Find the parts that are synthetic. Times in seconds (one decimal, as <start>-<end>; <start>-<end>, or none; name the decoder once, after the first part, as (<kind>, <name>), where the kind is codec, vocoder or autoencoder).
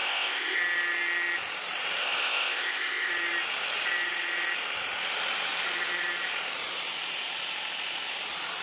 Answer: 0.0-0.6 (codec, ZipCodec); 2.0-3.1